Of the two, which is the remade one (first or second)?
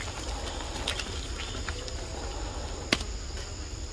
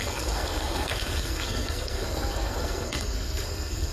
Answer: second